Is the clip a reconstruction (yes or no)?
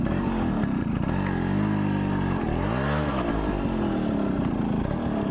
no